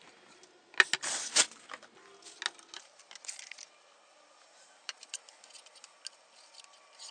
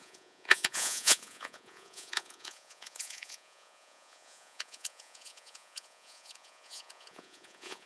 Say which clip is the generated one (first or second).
second